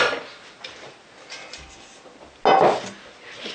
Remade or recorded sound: recorded